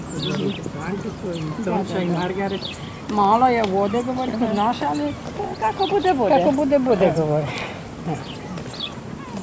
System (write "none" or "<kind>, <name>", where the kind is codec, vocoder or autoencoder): none